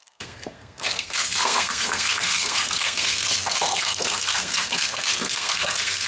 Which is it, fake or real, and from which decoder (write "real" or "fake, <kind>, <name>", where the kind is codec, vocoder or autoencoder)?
fake, codec, SNAC